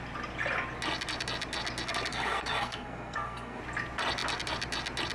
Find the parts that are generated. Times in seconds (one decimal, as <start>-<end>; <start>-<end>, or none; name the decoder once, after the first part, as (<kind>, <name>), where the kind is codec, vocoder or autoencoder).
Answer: 2.1-3.6 (codec, SNAC)